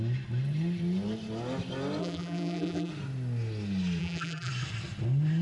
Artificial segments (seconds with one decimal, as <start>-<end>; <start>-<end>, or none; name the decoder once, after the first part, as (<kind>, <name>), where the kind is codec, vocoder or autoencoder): 2.0-2.9 (vocoder, BigVGAN v2); 4.0-4.5